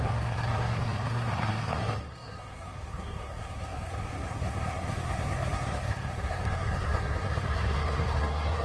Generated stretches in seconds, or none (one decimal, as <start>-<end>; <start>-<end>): 0.0-8.6